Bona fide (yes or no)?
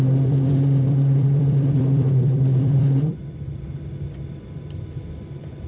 no